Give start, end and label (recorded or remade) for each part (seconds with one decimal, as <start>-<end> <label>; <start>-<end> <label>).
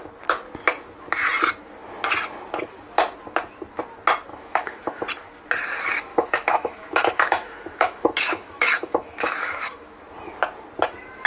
0.0-4.3 recorded; 4.3-5.0 remade; 5.0-6.1 recorded; 6.1-10.0 remade; 10.0-11.3 recorded